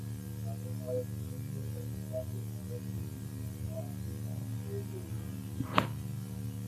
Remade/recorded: recorded